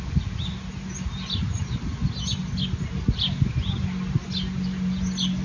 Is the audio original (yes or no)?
yes